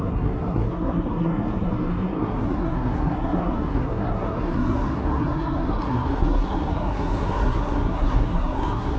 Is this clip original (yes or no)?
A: no